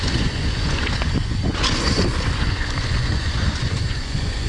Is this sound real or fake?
fake